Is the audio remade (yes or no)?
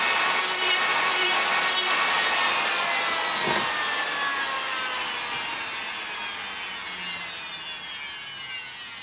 no